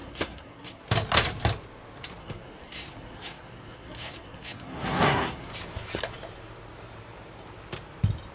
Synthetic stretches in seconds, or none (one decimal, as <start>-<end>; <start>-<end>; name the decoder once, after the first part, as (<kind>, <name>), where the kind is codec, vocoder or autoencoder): 0.0-0.8 (codec, SNAC); 2.2-5.5